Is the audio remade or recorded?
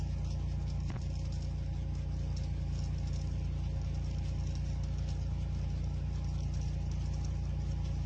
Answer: recorded